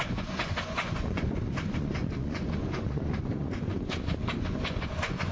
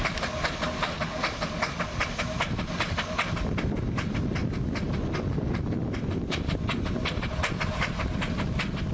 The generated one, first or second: first